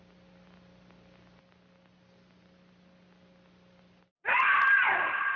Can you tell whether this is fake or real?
real